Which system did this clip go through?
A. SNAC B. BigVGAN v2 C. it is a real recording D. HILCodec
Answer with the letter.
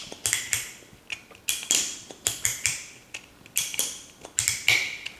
C